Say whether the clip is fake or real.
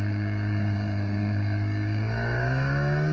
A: fake